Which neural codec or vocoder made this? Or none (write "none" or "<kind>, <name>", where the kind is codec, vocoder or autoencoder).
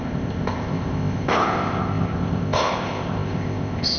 codec, ZipCodec